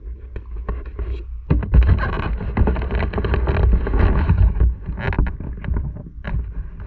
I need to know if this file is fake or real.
real